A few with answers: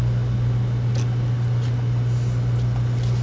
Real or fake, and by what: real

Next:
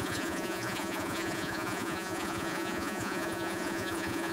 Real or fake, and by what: fake, vocoder, Vocos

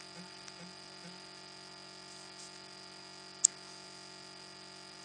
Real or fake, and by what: real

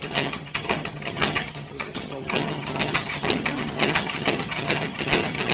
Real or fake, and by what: fake, vocoder, HiFi-GAN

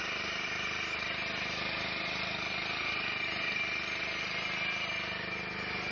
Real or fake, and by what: real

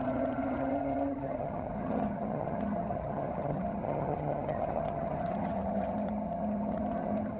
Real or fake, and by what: fake, vocoder, HiFi-GAN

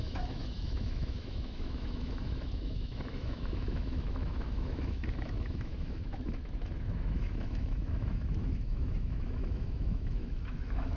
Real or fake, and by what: fake, autoencoder, DAC-VAE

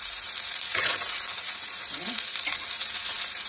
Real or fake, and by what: fake, vocoder, Vocos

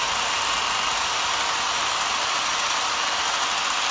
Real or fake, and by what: real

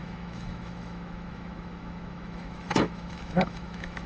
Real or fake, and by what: fake, autoencoder, DAC-VAE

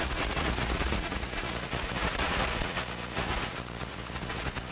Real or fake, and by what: fake, vocoder, Vocos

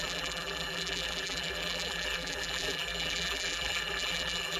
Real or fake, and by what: fake, vocoder, BigVGAN v2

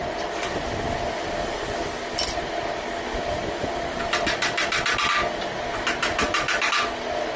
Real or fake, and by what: real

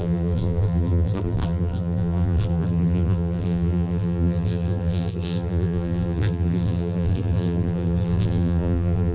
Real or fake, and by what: fake, vocoder, BigVGAN v2